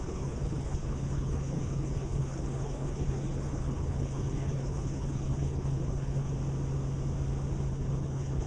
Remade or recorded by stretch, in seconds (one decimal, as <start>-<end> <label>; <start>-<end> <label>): 0.0-6.3 remade; 6.3-7.7 recorded; 7.7-8.5 remade